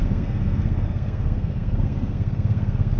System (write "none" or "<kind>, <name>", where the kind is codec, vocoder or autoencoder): codec, SNAC